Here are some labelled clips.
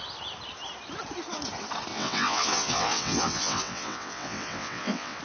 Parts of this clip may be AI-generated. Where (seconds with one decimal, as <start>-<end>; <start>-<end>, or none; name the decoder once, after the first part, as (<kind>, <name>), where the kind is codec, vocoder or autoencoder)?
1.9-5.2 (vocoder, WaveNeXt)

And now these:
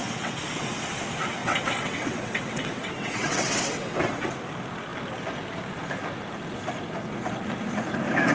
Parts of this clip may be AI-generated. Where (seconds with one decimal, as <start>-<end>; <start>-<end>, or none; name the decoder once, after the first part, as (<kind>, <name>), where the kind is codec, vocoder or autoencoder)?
0.0-0.9 (vocoder, WaveNeXt); 1.4-4.3

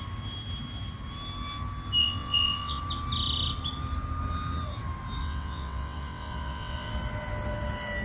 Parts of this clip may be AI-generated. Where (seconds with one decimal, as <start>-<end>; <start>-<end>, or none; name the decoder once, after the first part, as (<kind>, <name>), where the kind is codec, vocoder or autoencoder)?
2.0-2.8 (vocoder, WaveNeXt); 5.2-6.9

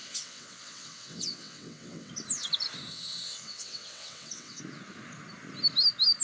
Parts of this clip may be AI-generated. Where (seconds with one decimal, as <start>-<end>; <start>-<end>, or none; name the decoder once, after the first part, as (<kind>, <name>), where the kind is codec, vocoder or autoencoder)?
0.0-2.1 (vocoder, WaveNeXt); 2.9-4.6